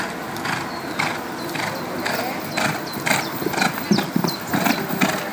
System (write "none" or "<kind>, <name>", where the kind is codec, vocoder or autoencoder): none